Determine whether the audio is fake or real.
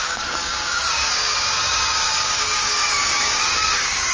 fake